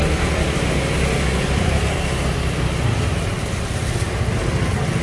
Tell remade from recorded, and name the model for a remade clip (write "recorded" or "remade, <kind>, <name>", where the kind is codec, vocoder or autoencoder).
recorded